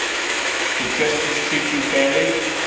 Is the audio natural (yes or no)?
no